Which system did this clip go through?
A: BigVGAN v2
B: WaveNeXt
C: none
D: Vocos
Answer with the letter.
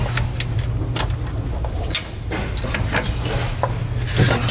C